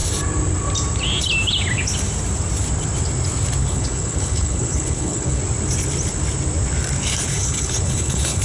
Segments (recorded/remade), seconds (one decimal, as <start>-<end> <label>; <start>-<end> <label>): 0.0-3.6 recorded; 3.6-5.4 remade; 5.4-7.3 recorded; 7.3-8.4 remade

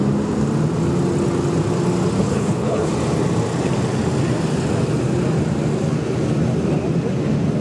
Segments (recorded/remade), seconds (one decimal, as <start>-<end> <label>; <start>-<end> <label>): 0.0-2.2 recorded; 2.2-2.9 remade; 2.9-7.6 recorded

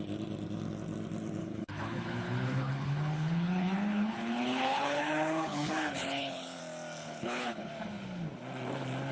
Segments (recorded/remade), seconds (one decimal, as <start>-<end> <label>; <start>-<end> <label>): 0.0-1.4 recorded; 1.4-6.6 remade; 6.6-7.0 recorded; 7.0-7.7 remade; 7.7-9.1 recorded

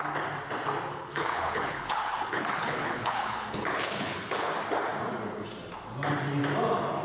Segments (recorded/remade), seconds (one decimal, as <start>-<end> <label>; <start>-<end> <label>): 0.0-0.9 recorded; 0.9-4.5 remade; 4.5-7.0 recorded

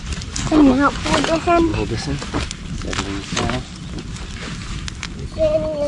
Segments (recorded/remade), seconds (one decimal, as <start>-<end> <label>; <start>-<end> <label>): 0.0-5.9 recorded

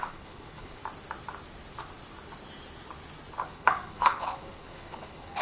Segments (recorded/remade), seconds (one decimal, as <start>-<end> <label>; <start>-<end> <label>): 0.0-0.8 remade; 0.8-3.4 recorded; 3.4-5.4 remade